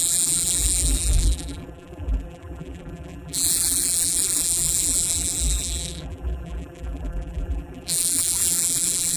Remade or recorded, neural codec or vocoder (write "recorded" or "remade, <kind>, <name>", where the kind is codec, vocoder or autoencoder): remade, vocoder, BigVGAN v2